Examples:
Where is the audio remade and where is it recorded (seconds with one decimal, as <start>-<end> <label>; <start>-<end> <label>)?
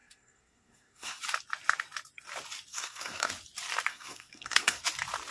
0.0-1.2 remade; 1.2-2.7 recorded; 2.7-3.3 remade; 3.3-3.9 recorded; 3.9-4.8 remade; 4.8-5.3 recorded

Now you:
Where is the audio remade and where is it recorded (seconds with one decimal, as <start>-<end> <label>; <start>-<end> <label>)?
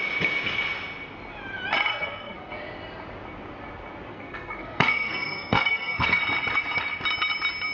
0.0-1.9 recorded; 1.9-2.5 remade; 2.5-4.1 recorded; 4.1-6.2 remade; 6.2-7.7 recorded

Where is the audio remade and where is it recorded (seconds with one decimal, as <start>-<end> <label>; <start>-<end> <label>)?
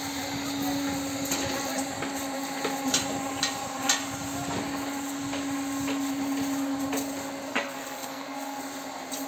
0.0-7.5 recorded; 7.5-8.6 remade; 8.6-9.3 recorded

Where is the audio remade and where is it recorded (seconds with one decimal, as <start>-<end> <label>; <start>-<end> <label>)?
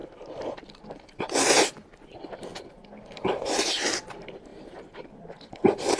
0.0-6.0 recorded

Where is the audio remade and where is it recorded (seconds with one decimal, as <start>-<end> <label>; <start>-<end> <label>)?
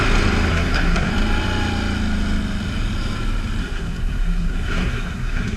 0.0-0.5 recorded; 0.5-1.1 remade; 1.1-3.6 recorded; 3.6-5.6 remade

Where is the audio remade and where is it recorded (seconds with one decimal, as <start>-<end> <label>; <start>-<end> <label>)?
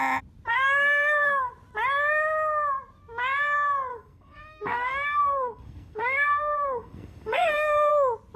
0.0-0.5 recorded; 0.5-1.5 remade; 1.5-3.9 recorded; 3.9-7.9 remade; 7.9-8.4 recorded